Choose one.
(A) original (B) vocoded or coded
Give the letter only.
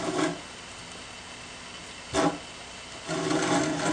A